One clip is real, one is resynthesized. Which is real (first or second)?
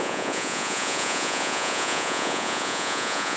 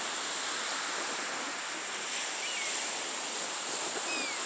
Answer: second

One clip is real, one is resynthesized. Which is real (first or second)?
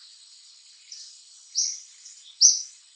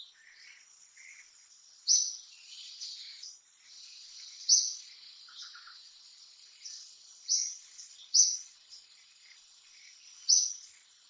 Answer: first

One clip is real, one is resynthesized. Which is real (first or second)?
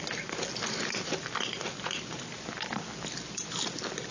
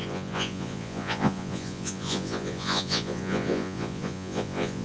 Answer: first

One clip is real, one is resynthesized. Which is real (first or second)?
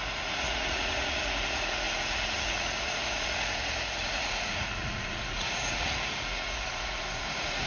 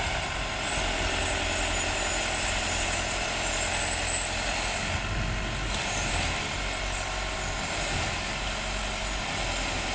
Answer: second